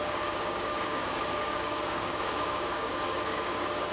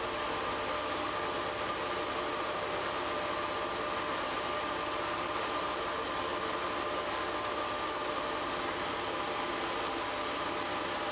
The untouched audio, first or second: second